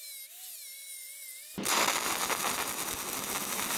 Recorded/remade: recorded